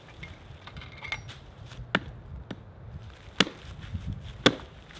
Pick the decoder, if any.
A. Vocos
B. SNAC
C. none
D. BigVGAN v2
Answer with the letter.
C